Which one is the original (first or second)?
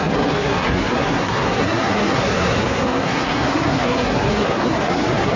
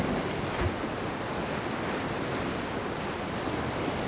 second